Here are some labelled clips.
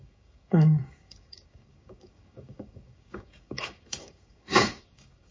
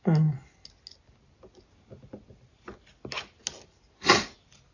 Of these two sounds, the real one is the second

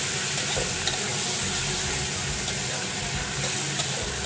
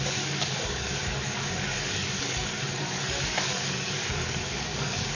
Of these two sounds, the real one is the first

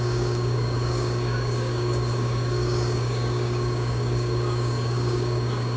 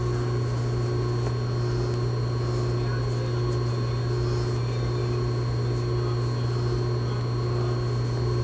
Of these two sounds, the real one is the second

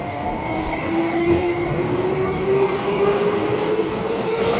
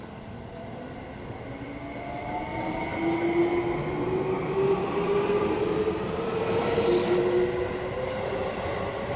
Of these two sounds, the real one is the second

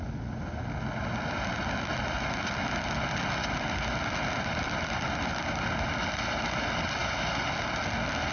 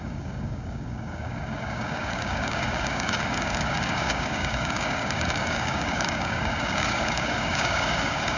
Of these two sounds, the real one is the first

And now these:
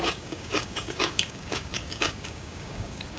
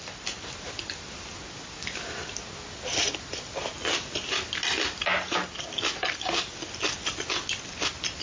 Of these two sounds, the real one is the second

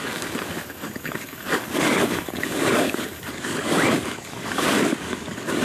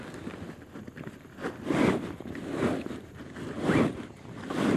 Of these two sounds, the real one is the second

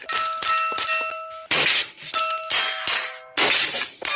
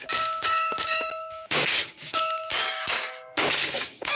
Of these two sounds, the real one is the first